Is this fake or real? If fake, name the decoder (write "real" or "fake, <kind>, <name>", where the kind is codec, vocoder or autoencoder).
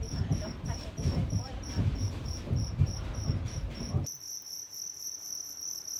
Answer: fake, vocoder, BigVGAN v2